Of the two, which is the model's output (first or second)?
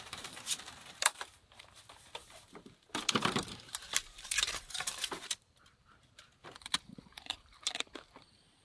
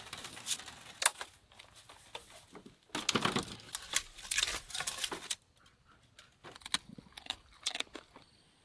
first